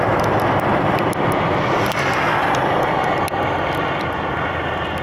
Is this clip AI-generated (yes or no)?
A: yes